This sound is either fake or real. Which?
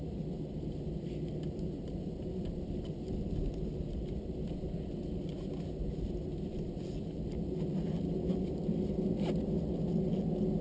real